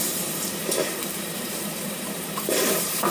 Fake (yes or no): yes